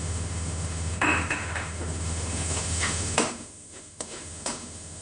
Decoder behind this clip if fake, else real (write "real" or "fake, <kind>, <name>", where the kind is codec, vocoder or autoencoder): fake, autoencoder, DAC-VAE